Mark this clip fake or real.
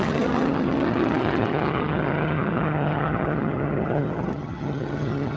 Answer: fake